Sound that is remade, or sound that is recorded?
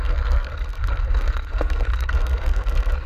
remade